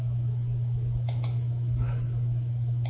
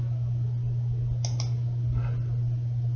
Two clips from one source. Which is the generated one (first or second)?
first